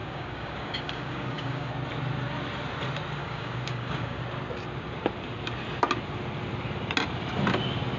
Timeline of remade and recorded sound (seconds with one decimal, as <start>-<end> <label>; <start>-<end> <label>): 0.0-1.7 remade; 1.7-3.2 recorded; 3.2-4.2 remade; 4.2-8.0 recorded